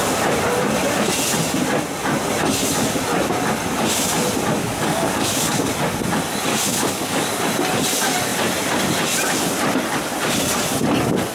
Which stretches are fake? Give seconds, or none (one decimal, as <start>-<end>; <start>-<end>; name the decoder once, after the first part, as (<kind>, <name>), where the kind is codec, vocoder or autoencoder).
4.6-5.7 (codec, DAC); 6.5-7.4